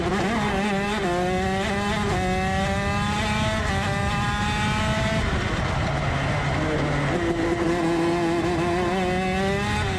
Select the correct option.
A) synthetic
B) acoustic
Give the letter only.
B